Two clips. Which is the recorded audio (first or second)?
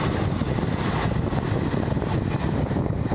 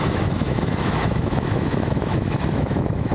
first